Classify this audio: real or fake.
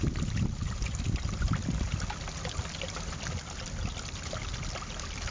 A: real